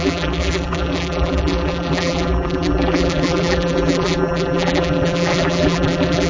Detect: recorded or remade remade